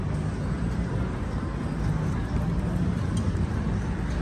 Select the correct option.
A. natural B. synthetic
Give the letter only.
A